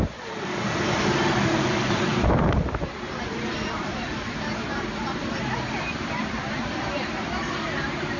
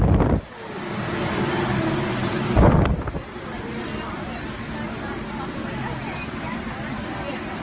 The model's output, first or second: first